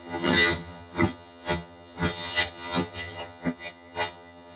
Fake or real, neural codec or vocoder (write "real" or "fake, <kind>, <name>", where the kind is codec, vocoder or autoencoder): fake, vocoder, HiFi-GAN